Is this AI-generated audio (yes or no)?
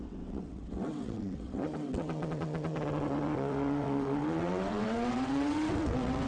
yes